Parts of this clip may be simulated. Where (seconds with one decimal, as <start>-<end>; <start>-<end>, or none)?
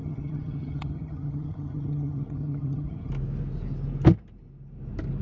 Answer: 0.0-3.1